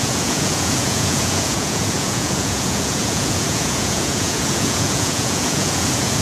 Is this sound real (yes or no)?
no